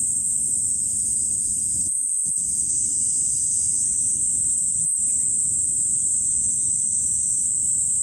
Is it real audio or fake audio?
real